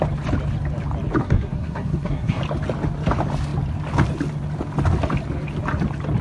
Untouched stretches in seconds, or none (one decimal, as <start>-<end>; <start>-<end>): 0.0-1.2; 2.4-6.2